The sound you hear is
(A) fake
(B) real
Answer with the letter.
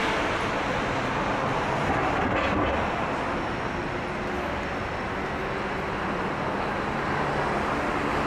B